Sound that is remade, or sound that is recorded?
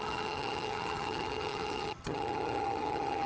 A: remade